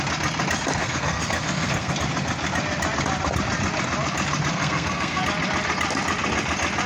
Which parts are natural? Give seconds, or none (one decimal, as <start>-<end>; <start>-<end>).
0.0-0.8; 1.9-4.5; 5.2-6.9